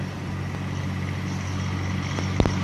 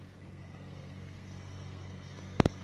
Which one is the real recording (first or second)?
first